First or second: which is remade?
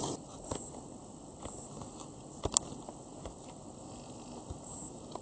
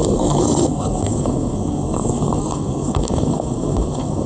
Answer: second